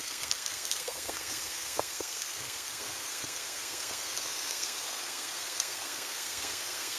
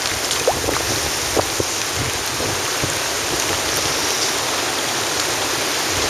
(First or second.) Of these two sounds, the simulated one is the first